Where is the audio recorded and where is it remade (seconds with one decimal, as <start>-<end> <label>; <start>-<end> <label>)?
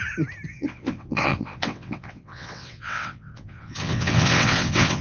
0.0-0.5 recorded; 0.5-5.0 remade